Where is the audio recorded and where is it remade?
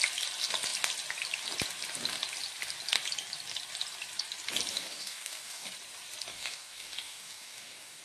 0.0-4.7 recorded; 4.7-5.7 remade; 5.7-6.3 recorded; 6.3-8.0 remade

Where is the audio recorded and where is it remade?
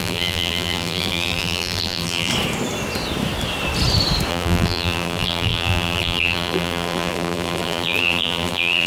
0.0-2.3 remade; 2.3-4.3 recorded; 4.3-8.9 remade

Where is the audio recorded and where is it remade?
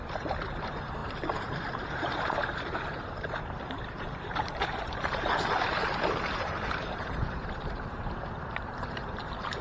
0.0-9.6 remade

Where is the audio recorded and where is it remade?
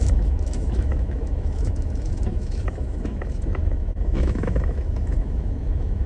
0.0-6.1 remade